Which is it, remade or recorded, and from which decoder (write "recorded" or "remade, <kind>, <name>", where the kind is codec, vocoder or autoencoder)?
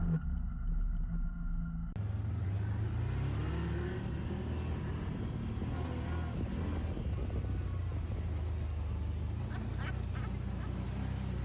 recorded